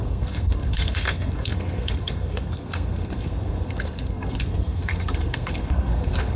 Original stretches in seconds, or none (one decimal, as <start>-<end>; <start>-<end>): none